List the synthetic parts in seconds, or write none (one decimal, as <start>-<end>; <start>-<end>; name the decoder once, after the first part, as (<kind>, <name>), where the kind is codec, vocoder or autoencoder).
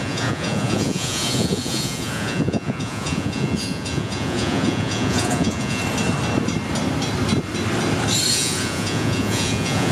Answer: 0.0-5.8 (vocoder, Vocos); 8.3-9.9